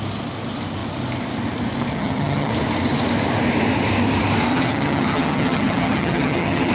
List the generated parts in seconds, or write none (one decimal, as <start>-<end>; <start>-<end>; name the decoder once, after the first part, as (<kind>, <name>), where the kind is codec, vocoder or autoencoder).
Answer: 1.9-2.5 (vocoder, HiFi-GAN); 4.5-6.7